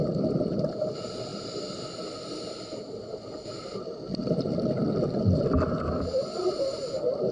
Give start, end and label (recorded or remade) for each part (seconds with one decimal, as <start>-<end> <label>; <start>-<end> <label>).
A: 0.0-1.3 remade; 1.3-2.5 recorded; 2.5-7.3 remade